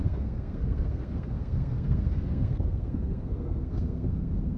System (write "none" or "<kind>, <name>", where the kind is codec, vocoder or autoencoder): codec, SNAC